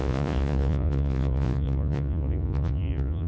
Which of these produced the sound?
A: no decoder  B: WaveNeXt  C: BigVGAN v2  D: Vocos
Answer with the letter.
D